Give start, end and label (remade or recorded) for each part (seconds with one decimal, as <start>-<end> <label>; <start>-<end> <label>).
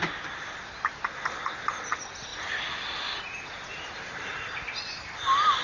0.0-5.6 recorded